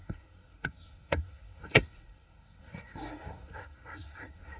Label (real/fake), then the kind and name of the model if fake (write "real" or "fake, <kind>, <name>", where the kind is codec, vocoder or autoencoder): fake, codec, SNAC